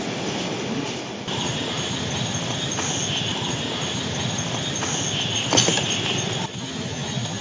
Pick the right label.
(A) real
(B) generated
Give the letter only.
A